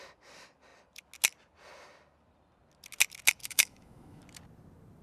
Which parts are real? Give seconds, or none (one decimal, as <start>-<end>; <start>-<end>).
0.0-3.4; 4.2-5.0